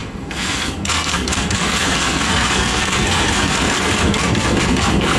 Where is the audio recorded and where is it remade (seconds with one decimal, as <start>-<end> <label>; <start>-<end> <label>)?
0.0-5.2 remade